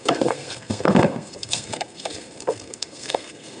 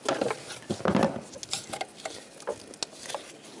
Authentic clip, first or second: second